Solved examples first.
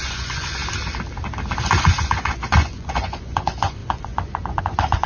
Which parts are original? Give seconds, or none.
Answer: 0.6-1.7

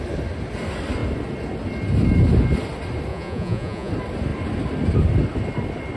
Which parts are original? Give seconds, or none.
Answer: 0.0-3.1; 3.9-6.0